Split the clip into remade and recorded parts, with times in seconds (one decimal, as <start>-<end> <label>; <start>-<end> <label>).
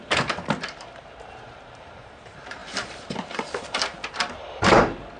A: 0.0-5.2 remade